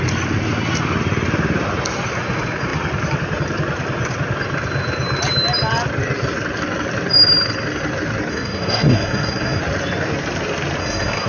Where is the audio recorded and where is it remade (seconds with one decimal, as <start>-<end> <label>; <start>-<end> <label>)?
0.0-8.3 recorded; 8.3-9.6 remade; 9.6-10.8 recorded; 10.8-11.3 remade